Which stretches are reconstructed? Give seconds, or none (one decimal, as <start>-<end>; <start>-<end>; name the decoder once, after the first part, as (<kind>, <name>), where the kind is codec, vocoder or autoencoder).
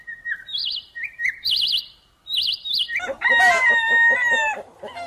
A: none